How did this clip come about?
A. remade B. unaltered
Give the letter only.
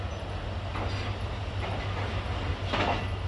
B